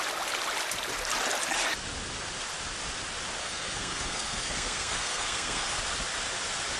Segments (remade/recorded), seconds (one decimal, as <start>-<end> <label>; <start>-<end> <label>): 0.0-3.4 recorded; 3.4-5.8 remade; 5.8-6.8 recorded